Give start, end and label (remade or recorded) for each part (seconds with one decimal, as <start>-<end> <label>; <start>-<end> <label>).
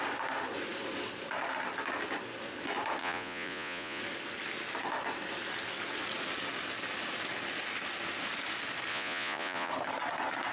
0.0-3.0 recorded; 3.0-4.0 remade; 4.0-8.9 recorded; 8.9-9.7 remade; 9.7-10.5 recorded